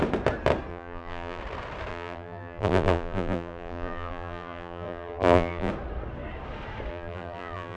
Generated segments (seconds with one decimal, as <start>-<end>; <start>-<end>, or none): 0.7-1.4; 1.9-5.7; 6.9-7.8